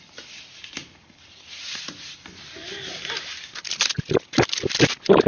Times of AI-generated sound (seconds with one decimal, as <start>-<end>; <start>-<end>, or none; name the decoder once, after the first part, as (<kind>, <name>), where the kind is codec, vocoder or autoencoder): none